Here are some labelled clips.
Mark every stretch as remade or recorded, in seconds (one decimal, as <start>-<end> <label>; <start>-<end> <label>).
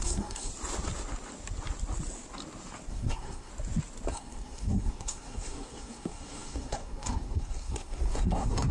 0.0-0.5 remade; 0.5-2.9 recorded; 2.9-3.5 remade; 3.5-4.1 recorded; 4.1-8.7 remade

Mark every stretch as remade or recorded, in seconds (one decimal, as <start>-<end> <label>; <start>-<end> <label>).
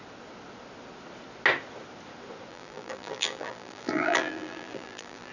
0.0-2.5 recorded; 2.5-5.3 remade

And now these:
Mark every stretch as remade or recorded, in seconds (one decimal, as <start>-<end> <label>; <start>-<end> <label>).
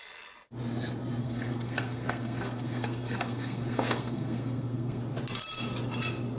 0.0-1.2 recorded; 1.2-5.0 remade; 5.0-6.4 recorded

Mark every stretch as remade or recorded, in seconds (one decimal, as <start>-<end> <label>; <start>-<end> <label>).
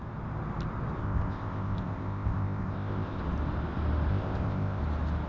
0.0-1.0 recorded; 1.0-3.2 remade; 3.2-4.1 recorded; 4.1-4.8 remade; 4.8-5.3 recorded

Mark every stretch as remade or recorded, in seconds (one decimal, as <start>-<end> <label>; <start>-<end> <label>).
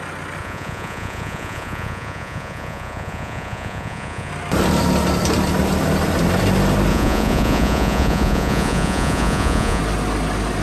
0.0-0.4 recorded; 0.4-4.3 remade; 4.3-6.9 recorded; 6.9-9.8 remade; 9.8-10.6 recorded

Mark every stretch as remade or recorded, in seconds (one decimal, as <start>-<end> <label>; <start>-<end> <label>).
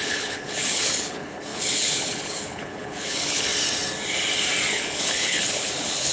0.0-3.5 remade; 3.5-4.7 recorded; 4.7-6.1 remade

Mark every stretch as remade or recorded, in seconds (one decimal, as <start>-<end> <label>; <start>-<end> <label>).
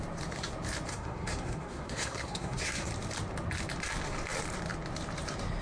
0.0-0.9 recorded; 0.9-2.9 remade; 2.9-5.6 recorded